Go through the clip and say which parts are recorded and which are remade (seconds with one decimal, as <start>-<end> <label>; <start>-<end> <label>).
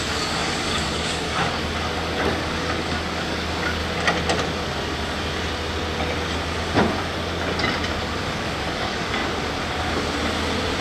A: 0.0-3.8 remade; 3.8-8.0 recorded; 8.0-9.2 remade; 9.2-10.8 recorded